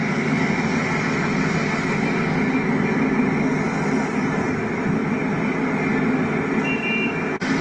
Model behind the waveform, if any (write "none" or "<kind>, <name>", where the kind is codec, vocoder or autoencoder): none